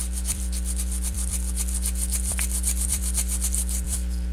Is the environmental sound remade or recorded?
remade